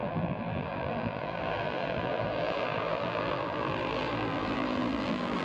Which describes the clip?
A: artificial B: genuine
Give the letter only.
A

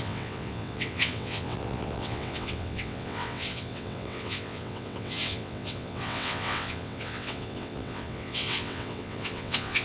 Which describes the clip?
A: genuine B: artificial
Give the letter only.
B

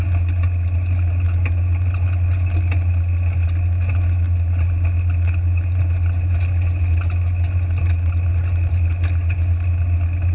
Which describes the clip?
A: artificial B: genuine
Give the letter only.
B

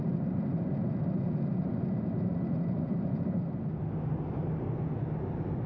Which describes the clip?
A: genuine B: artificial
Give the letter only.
A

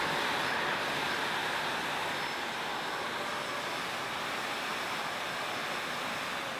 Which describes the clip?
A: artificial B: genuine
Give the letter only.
B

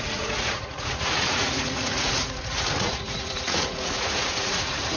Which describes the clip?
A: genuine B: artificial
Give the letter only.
B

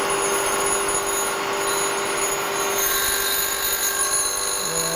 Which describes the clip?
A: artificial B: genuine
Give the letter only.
B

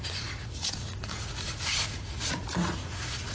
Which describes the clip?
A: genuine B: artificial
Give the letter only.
B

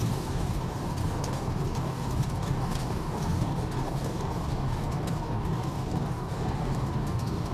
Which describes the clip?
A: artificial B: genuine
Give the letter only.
A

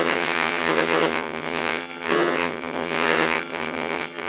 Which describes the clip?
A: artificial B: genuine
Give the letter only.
A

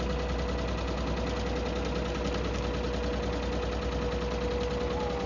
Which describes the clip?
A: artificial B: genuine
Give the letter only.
B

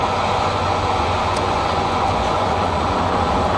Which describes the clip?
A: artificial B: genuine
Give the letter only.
A